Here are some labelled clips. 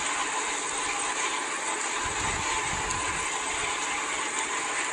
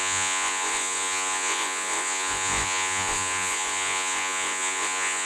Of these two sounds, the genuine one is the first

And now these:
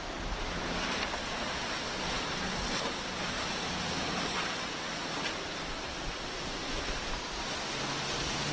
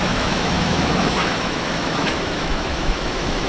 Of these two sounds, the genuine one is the first